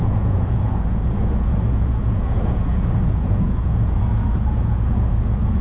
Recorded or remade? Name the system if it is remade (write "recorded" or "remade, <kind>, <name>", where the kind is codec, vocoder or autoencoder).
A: remade, vocoder, Vocos